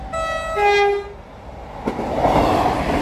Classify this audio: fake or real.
real